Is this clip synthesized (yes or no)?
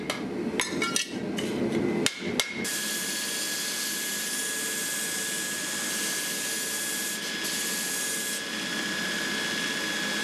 no